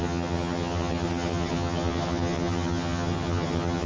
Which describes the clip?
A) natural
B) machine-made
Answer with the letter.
B